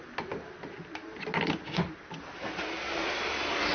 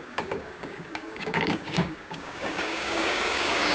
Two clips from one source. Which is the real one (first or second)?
first